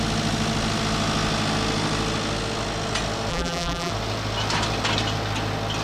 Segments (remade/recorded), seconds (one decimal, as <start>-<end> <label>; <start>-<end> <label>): 0.0-3.3 recorded; 3.3-3.9 remade; 3.9-5.8 recorded